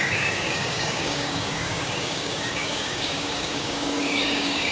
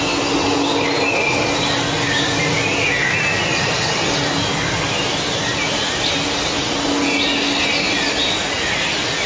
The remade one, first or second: first